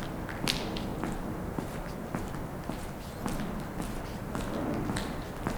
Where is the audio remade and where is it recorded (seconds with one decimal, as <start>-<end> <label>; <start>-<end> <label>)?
0.0-0.9 recorded; 0.9-4.3 remade; 4.3-5.6 recorded